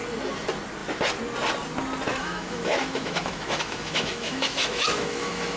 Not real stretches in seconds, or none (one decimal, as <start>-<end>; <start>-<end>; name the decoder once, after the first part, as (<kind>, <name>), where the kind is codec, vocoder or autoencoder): 2.1-5.6 (autoencoder, DAC-VAE)